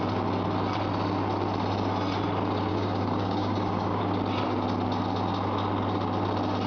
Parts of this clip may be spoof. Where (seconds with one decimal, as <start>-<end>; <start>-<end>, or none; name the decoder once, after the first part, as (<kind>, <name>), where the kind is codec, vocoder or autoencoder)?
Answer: 2.7-4.0 (codec, DAC)